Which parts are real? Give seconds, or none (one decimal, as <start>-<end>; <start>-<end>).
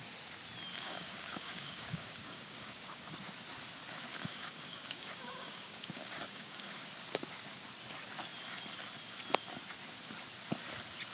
0.0-0.7; 3.1-4.1; 6.9-11.1